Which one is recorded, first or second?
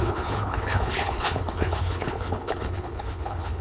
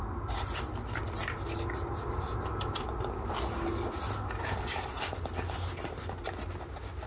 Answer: second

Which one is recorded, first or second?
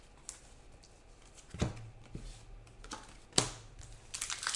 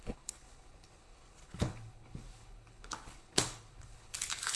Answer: first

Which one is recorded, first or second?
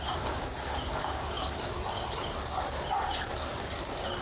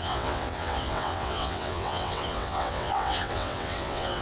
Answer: first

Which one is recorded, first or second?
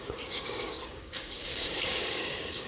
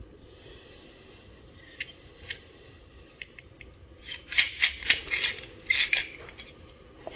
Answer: second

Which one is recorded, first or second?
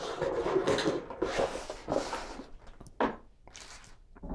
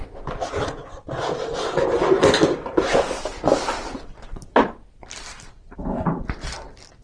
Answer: first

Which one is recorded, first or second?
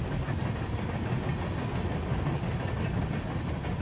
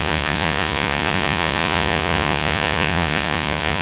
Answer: first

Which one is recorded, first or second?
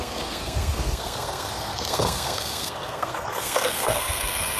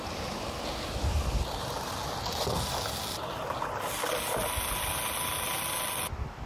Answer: second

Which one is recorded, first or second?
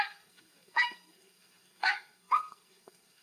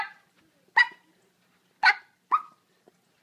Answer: second